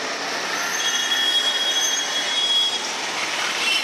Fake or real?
fake